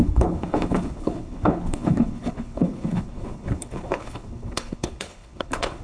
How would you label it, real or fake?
fake